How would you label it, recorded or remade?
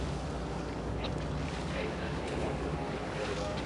remade